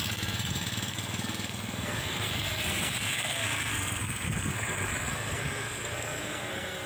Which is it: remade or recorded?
remade